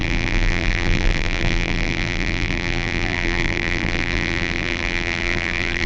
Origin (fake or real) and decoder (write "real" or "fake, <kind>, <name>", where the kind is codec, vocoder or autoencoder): fake, vocoder, BigVGAN v2